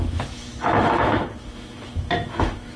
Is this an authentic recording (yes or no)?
no